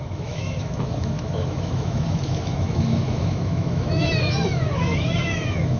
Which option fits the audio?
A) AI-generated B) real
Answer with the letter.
A